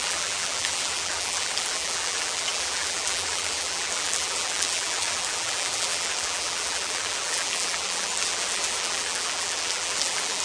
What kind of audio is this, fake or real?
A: fake